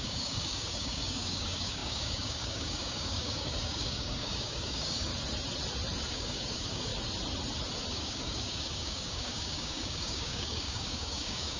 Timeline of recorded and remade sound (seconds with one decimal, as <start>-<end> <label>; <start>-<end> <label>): 0.0-5.1 remade; 5.1-6.1 recorded; 6.1-6.9 remade; 6.9-7.9 recorded; 7.9-11.6 remade